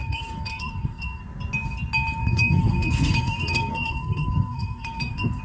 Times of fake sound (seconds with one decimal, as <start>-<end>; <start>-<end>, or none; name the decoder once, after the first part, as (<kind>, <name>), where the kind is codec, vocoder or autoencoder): 0.0-1.2 (codec, SNAC); 2.2-5.4